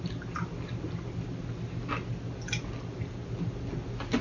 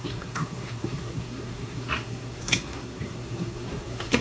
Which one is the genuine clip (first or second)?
first